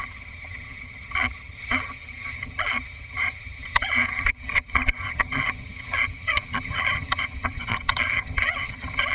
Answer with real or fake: fake